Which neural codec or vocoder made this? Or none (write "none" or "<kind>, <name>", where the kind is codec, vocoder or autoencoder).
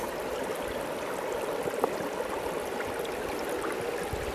none